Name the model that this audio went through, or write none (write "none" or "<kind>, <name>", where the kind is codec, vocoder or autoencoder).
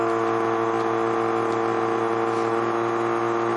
none